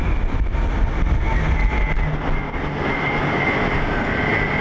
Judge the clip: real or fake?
real